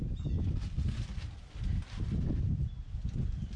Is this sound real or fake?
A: real